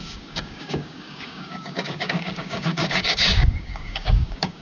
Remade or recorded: remade